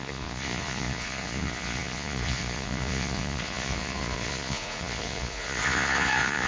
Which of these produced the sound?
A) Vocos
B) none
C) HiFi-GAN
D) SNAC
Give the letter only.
A